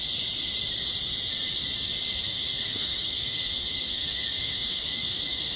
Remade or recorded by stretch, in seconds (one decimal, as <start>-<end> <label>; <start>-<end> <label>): 0.0-2.1 recorded; 2.1-5.6 remade